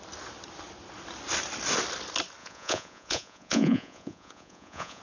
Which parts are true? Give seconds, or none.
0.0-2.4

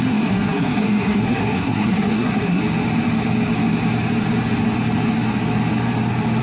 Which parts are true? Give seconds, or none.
2.6-6.4